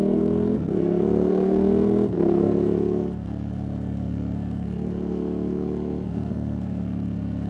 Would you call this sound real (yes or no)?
no